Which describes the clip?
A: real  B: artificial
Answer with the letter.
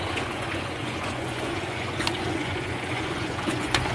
B